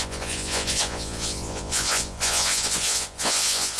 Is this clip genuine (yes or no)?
no